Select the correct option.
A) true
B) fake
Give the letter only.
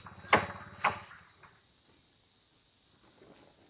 A